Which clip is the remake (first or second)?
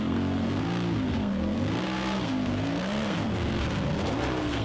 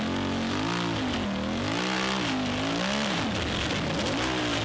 first